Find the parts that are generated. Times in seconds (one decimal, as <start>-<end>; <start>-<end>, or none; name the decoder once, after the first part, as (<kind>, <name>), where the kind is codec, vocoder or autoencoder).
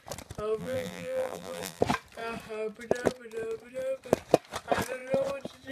0.6-1.8 (vocoder, BigVGAN v2)